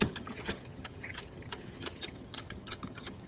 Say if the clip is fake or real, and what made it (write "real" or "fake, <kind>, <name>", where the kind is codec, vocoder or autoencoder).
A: fake, vocoder, HiFi-GAN